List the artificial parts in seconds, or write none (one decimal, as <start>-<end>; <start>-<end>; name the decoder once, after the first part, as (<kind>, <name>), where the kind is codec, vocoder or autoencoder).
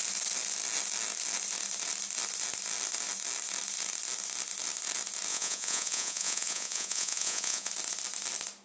5.3-7.7 (vocoder, Vocos)